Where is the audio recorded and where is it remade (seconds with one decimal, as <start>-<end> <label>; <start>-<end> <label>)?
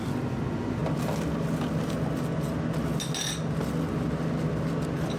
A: 0.0-5.2 recorded